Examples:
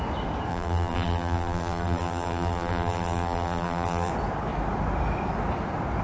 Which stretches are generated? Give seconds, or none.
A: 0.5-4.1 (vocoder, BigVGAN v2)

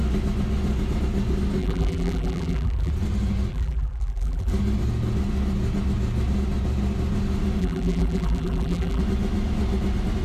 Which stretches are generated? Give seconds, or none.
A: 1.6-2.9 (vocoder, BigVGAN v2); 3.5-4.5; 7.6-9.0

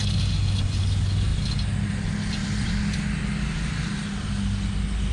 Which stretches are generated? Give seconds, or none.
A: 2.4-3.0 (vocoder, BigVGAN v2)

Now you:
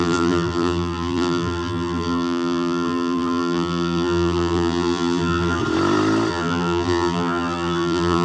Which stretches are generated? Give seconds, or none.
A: 0.0-5.6 (vocoder, BigVGAN v2); 6.3-8.2